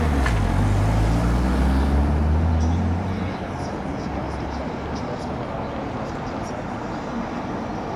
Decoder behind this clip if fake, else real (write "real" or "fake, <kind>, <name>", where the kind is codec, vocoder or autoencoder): real